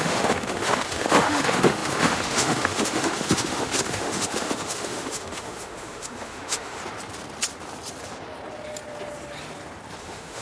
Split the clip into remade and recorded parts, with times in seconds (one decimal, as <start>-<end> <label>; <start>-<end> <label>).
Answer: 0.0-6.8 remade; 6.8-10.0 recorded; 10.0-10.4 remade